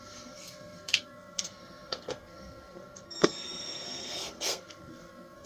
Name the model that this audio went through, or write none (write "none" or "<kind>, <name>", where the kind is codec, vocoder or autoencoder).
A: codec, SNAC